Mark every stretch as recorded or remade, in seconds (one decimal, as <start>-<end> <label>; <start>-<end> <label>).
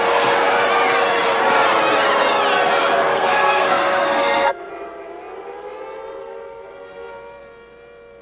0.0-3.1 recorded; 3.1-4.7 remade; 4.7-6.2 recorded; 6.2-7.1 remade; 7.1-8.2 recorded